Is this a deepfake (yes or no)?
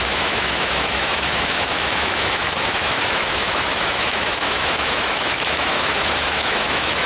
yes